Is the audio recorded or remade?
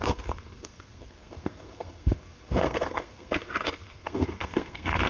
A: remade